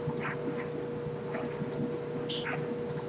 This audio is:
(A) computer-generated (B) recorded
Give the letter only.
B